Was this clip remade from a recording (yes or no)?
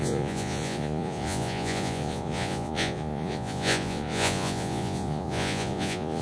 yes